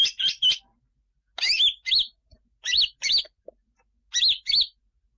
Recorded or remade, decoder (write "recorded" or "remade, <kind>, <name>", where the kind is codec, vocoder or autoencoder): recorded